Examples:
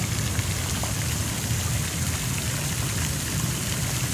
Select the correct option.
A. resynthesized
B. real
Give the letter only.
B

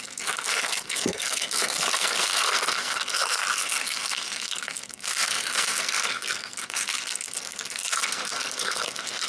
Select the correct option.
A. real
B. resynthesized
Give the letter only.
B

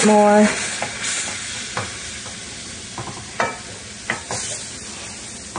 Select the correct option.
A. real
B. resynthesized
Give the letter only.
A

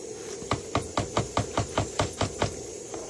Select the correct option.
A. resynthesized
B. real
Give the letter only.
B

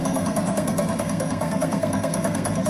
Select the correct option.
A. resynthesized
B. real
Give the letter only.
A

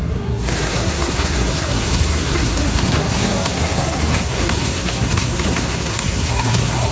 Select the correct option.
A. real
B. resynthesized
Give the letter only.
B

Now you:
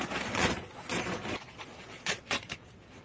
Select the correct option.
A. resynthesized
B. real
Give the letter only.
A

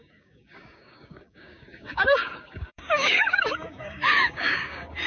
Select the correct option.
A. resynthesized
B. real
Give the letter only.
A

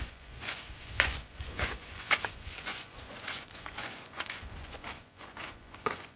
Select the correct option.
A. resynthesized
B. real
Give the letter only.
A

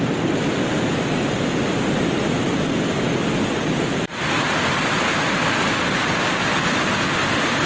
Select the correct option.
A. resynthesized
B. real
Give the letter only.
B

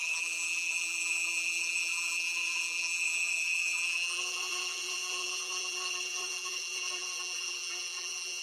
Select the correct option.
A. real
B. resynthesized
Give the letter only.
B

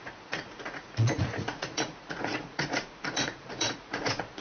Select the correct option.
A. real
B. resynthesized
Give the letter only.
B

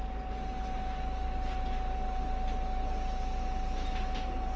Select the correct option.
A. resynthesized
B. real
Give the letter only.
B